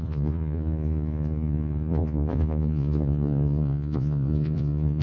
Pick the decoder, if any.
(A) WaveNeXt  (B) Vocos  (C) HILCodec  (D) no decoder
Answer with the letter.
B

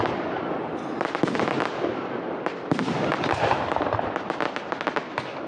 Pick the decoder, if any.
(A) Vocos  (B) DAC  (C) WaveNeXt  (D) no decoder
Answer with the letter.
D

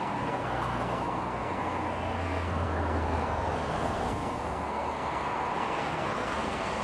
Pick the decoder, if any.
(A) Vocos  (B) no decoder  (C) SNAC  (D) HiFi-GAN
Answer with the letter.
C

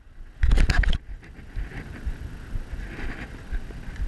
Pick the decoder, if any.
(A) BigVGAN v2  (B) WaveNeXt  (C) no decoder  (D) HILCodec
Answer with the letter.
C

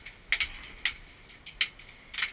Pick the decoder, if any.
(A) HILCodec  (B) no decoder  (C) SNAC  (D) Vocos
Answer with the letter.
B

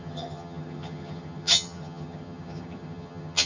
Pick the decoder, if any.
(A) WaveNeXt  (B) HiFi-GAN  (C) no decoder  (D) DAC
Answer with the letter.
B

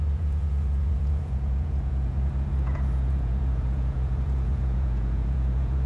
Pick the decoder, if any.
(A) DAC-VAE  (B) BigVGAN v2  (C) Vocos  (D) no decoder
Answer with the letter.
C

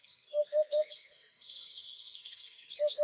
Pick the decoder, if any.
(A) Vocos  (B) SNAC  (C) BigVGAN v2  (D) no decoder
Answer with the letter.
B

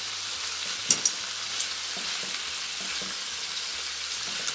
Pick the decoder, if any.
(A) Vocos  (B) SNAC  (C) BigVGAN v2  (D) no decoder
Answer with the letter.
D